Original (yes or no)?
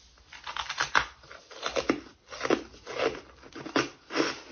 yes